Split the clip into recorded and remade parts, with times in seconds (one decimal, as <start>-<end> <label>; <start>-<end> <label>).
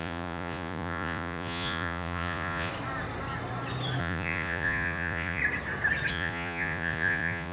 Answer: 0.0-2.7 remade; 2.7-4.0 recorded; 4.0-5.4 remade; 5.4-6.1 recorded; 6.1-7.5 remade